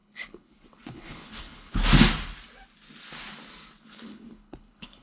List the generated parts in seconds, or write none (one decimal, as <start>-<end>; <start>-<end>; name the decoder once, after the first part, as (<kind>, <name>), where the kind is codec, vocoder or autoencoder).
0.0-1.8 (codec, HILCodec); 3.8-5.0